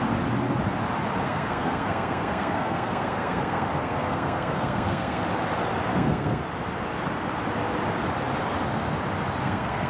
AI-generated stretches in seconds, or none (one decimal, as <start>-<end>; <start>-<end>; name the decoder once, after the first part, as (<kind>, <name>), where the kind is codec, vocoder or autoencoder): 1.2-5.2 (codec, SNAC); 5.9-6.4; 9.4-9.9